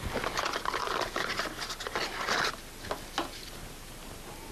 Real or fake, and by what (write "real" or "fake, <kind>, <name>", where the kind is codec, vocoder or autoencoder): real